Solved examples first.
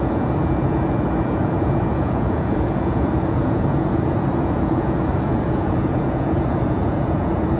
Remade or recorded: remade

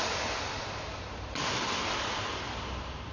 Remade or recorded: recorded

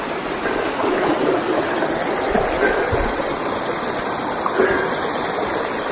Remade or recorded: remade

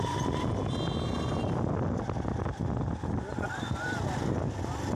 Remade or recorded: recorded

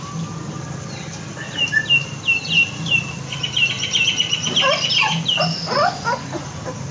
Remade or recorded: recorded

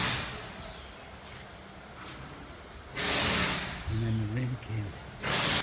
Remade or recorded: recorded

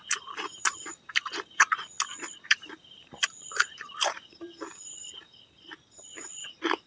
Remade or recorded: remade